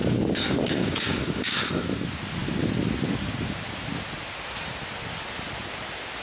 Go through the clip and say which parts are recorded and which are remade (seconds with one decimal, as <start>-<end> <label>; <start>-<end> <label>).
0.0-1.7 remade; 1.7-6.2 recorded